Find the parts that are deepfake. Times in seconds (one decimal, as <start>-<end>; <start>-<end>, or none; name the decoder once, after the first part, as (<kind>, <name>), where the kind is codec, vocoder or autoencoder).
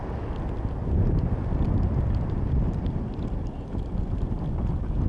none